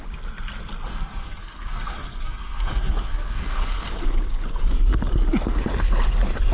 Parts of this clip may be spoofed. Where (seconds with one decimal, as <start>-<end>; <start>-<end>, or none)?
0.9-3.9